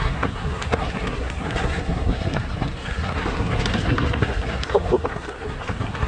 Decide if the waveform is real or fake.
fake